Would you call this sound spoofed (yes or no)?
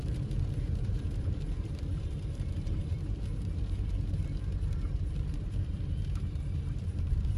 yes